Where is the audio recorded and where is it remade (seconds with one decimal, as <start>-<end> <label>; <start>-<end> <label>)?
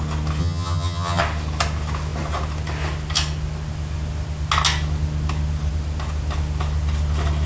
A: 0.0-0.4 recorded; 0.4-1.2 remade; 1.2-7.5 recorded